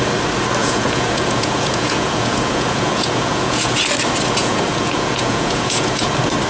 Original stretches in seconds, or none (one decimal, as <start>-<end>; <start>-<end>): 0.0-0.6; 3.9-4.4; 6.1-6.5

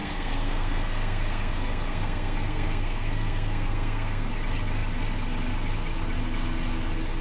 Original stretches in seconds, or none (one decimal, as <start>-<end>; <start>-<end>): 4.3-7.2

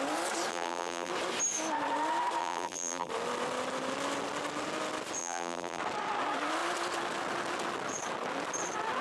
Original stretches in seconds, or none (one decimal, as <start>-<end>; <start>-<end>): 0.0-0.5; 1.1-2.4; 3.1-5.2; 5.8-9.0

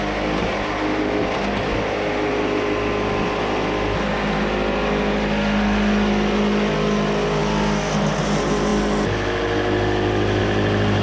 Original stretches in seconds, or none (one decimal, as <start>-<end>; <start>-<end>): 0.0-11.0